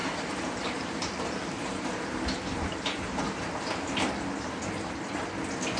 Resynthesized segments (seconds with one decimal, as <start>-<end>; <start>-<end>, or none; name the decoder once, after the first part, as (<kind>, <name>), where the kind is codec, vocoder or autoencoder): 0.0-3.5 (vocoder, BigVGAN v2)